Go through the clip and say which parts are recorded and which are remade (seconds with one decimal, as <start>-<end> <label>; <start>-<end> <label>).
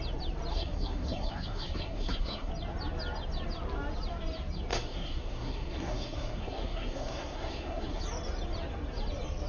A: 0.0-0.5 recorded; 0.5-2.5 remade; 2.5-4.7 recorded; 4.7-8.0 remade; 8.0-9.5 recorded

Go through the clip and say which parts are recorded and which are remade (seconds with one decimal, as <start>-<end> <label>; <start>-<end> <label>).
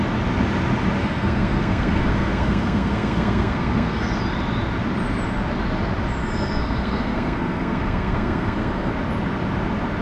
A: 0.0-1.0 recorded; 1.0-4.2 remade; 4.2-6.2 recorded; 6.2-8.9 remade; 8.9-10.0 recorded